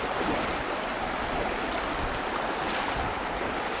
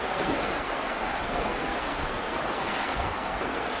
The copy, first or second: second